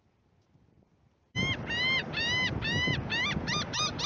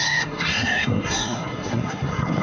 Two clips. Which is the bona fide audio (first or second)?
first